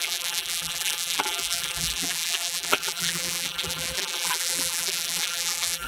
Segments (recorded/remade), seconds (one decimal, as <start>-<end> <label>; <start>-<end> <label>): 0.0-5.9 remade